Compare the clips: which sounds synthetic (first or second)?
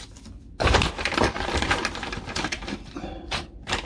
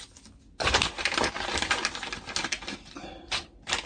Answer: first